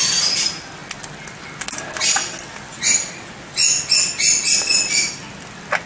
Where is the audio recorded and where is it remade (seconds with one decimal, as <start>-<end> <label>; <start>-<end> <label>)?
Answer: 0.0-5.9 recorded